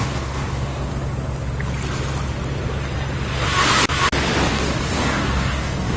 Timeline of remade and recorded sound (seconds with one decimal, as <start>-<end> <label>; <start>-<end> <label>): 0.0-0.9 remade; 0.9-4.5 recorded; 4.5-6.0 remade